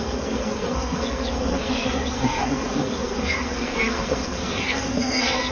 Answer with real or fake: fake